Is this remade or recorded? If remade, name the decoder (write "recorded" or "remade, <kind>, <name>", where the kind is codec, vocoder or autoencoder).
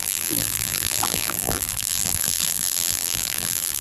remade, vocoder, BigVGAN v2